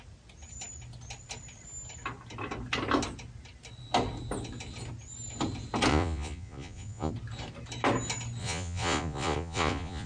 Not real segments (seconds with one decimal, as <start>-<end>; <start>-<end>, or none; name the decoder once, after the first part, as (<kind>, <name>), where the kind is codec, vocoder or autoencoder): 5.9-7.1 (vocoder, Vocos); 8.4-10.1